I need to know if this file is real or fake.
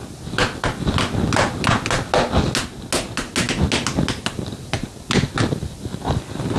real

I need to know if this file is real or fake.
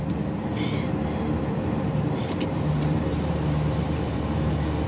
fake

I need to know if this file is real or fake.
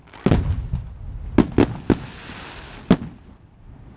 real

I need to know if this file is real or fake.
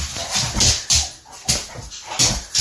real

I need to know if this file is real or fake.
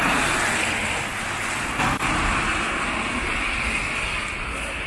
real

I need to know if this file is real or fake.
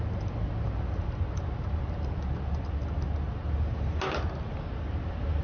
real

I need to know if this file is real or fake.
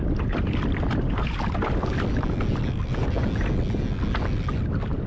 real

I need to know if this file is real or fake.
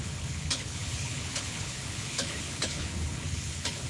fake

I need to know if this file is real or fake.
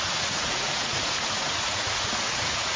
fake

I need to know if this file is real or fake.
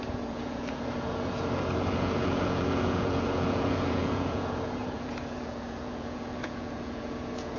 fake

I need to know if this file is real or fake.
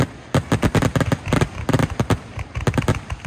real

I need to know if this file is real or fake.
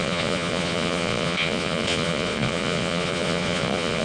fake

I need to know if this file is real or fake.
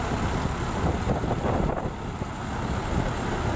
real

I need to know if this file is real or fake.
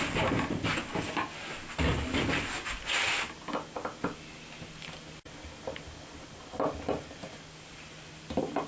real